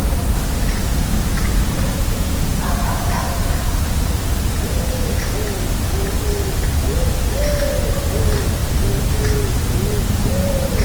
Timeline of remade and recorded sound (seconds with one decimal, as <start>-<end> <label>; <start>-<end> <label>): 0.0-0.8 recorded; 0.8-3.1 remade; 3.1-10.8 recorded

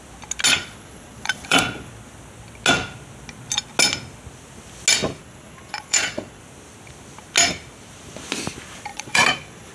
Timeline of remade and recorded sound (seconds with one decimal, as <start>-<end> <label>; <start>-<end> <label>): 0.0-0.6 recorded; 0.6-1.9 remade; 1.9-5.2 recorded; 5.2-6.4 remade; 6.4-8.9 recorded; 8.9-9.7 remade

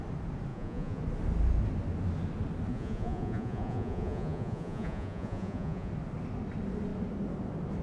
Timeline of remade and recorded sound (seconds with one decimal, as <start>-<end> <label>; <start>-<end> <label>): 0.0-0.5 recorded; 0.5-1.0 remade; 1.0-2.7 recorded; 2.7-5.9 remade; 5.9-7.8 recorded

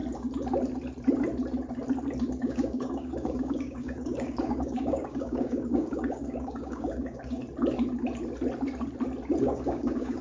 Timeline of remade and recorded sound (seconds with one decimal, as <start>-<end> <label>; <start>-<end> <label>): 0.0-2.4 recorded; 2.4-7.4 remade; 7.4-9.4 recorded; 9.4-10.2 remade

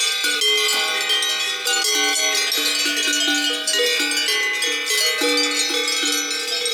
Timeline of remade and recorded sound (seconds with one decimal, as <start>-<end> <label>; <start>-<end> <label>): 0.0-6.7 recorded

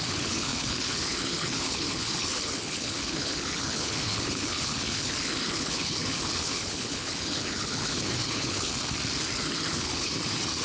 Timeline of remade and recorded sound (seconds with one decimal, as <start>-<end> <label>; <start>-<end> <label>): 0.0-8.8 remade; 8.8-9.7 recorded; 9.7-10.1 remade; 10.1-10.6 recorded